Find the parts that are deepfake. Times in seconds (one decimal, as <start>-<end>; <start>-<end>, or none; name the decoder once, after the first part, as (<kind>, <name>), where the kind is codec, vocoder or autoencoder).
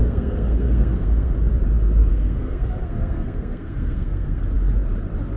0.0-1.3 (codec, SNAC); 2.1-4.4